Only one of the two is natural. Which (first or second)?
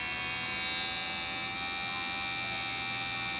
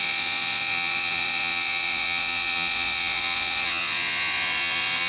first